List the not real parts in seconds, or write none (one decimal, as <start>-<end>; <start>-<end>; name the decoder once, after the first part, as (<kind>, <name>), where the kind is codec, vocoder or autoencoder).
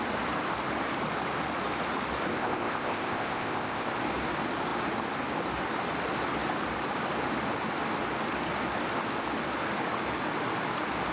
2.3-3.9 (codec, ZipCodec)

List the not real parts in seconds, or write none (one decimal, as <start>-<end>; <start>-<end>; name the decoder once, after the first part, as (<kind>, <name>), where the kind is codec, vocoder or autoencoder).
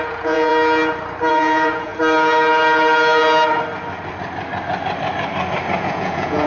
0.0-0.5 (vocoder, Vocos); 1.3-1.9; 5.8-6.5